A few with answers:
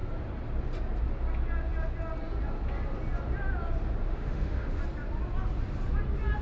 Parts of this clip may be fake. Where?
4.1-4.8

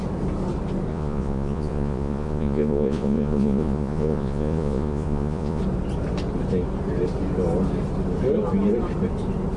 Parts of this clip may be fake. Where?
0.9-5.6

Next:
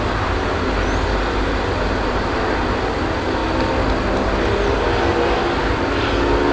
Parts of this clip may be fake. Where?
none